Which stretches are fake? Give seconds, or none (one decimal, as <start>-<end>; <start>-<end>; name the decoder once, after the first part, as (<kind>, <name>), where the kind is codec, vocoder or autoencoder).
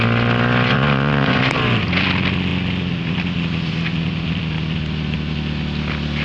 0.7-1.4 (vocoder, Vocos)